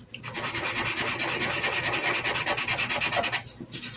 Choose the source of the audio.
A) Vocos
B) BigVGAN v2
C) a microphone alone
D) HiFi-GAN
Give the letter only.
C